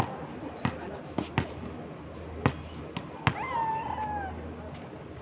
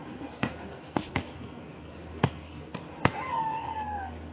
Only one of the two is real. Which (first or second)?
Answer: first